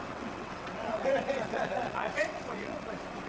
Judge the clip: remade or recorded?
remade